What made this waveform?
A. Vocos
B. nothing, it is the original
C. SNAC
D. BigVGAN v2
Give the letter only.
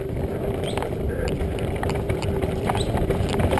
B